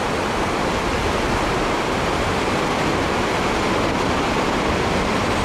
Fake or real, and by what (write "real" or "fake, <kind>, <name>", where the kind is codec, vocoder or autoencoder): real